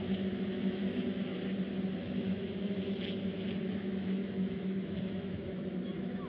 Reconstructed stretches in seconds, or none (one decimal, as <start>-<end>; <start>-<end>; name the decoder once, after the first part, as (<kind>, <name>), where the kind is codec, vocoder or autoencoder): 0.0-1.3 (autoencoder, DAC-VAE); 2.0-6.3